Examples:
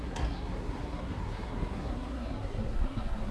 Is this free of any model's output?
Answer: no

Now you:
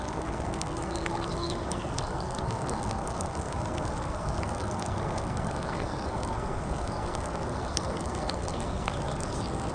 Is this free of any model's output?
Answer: no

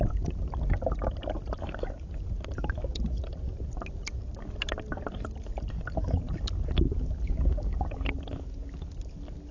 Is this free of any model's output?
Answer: yes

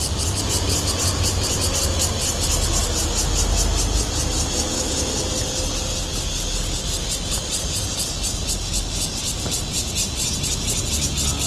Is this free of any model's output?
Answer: yes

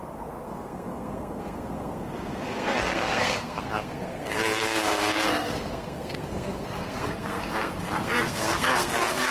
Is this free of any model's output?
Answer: no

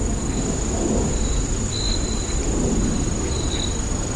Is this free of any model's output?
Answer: yes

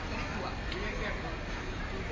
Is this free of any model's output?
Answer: yes